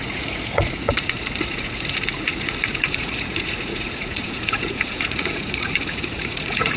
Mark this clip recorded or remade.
remade